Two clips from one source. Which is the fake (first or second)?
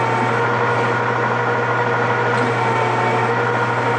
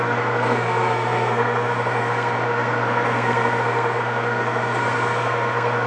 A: second